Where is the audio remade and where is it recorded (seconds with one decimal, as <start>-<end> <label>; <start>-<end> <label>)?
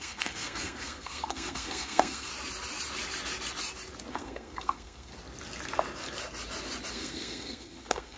0.0-2.3 remade; 2.3-4.1 recorded; 4.1-5.1 remade; 5.1-6.9 recorded; 6.9-8.2 remade